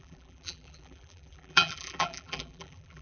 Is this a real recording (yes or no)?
no